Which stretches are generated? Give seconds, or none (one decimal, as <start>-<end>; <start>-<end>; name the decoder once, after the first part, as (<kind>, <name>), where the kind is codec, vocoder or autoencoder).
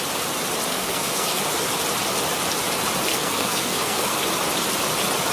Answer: 0.7-1.4 (codec, SNAC); 3.1-4.2